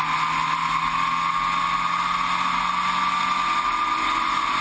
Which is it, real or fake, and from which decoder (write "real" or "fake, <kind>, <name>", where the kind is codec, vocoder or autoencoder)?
real